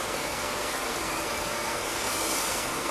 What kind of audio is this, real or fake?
fake